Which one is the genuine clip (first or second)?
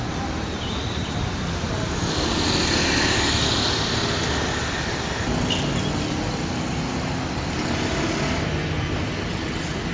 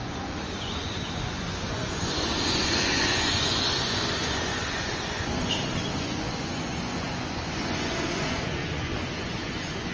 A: first